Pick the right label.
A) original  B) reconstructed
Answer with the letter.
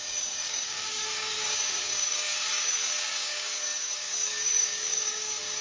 B